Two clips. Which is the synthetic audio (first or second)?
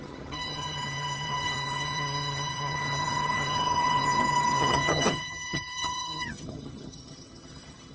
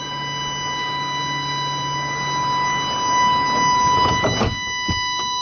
first